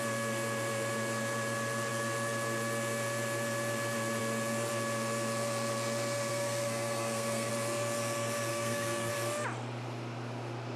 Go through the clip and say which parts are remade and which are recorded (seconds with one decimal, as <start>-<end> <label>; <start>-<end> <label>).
0.0-6.3 recorded; 6.3-7.5 remade; 7.5-8.5 recorded; 8.5-9.1 remade; 9.1-10.8 recorded